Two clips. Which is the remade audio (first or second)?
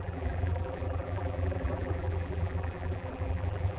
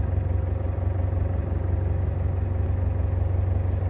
first